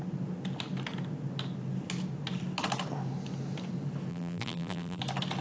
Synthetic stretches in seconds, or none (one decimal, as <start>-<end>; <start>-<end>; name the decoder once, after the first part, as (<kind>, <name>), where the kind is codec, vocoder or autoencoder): 4.1-5.0 (vocoder, BigVGAN v2)